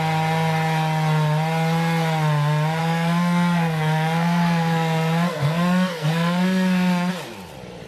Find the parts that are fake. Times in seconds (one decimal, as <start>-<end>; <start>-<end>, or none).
2.8-7.1